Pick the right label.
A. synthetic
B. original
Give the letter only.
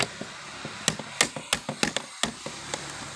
B